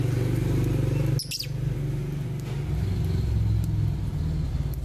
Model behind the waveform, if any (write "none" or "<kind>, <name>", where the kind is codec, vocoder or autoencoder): none